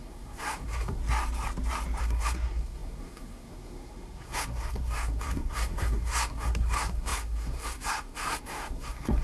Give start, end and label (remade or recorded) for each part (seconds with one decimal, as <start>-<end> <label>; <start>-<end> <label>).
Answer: 0.0-1.0 remade; 1.0-2.0 recorded; 2.0-9.2 remade